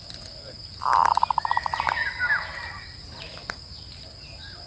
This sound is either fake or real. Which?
real